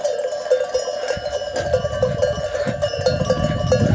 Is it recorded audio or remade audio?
recorded